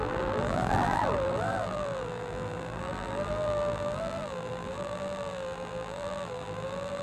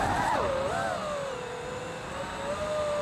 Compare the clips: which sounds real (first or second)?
second